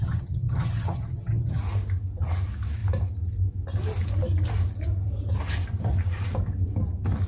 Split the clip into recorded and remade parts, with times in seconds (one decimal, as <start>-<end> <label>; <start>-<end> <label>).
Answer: 0.0-1.6 remade; 1.6-7.3 recorded